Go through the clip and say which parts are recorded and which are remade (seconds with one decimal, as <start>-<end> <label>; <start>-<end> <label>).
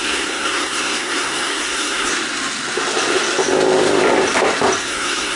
0.0-2.1 remade; 2.1-4.8 recorded; 4.8-5.4 remade